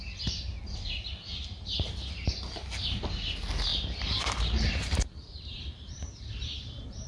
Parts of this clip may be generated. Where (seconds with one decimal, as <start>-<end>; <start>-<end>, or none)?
1.3-2.1; 3.7-7.1